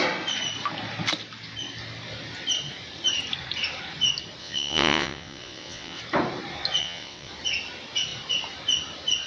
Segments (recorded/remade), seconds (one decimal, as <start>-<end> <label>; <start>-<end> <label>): 0.0-4.4 recorded; 4.4-6.0 remade; 6.0-6.8 recorded; 6.8-7.3 remade; 7.3-9.3 recorded